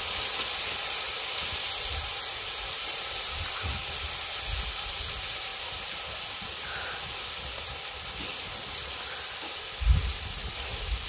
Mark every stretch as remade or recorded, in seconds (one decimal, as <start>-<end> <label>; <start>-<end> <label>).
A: 0.0-1.9 recorded; 1.9-3.5 remade; 3.5-11.1 recorded